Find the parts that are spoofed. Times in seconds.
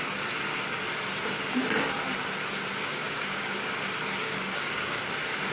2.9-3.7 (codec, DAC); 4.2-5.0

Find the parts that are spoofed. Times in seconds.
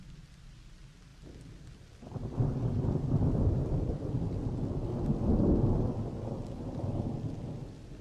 none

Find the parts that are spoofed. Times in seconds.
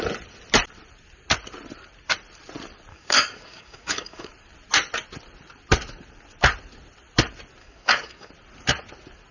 2.9-4.3 (codec, DAC); 7.6-8.3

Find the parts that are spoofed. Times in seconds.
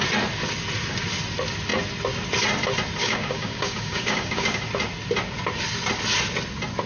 3.0-4.6 (codec, DAC)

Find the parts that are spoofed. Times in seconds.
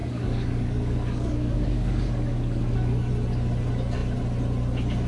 0.0-3.1 (codec, DAC)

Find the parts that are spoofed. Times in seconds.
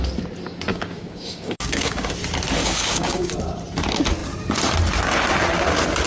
0.7-2.1 (codec, DAC); 2.6-3.3